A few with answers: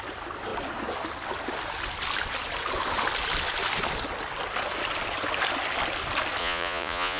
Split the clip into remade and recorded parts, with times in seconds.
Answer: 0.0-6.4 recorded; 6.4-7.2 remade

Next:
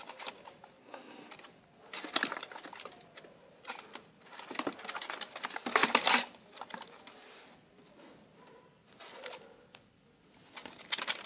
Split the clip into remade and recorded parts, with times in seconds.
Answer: 0.0-0.8 recorded; 0.8-1.3 remade; 1.3-11.3 recorded

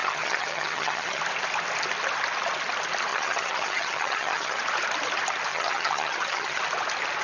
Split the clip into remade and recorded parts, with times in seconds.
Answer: 0.0-1.2 remade; 1.2-3.1 recorded; 3.1-4.6 remade; 4.6-5.5 recorded; 5.5-6.6 remade; 6.6-7.2 recorded

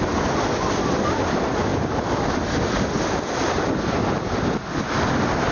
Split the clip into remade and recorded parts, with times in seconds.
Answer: 0.0-5.5 recorded

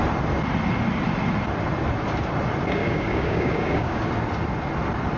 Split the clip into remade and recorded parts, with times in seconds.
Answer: 0.0-2.8 recorded; 2.8-4.0 remade; 4.0-5.2 recorded

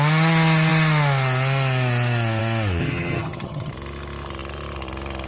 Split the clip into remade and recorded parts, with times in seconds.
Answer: 0.0-2.8 recorded; 2.8-3.7 remade; 3.7-5.3 recorded